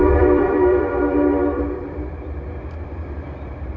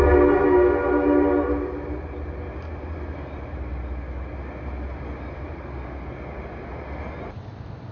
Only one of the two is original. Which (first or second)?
second